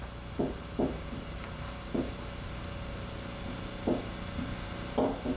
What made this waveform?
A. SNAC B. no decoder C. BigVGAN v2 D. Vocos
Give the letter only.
B